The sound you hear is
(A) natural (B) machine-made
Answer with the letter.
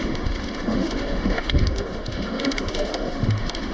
B